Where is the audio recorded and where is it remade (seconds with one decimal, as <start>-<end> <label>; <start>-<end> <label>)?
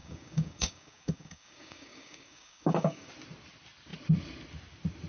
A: 0.0-3.1 remade; 3.1-5.1 recorded